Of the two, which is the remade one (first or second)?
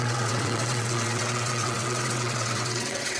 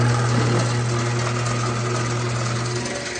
first